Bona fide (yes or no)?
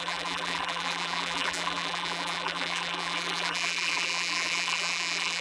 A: no